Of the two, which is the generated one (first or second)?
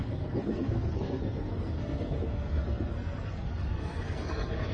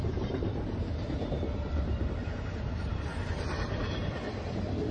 first